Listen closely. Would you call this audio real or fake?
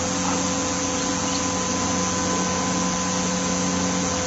real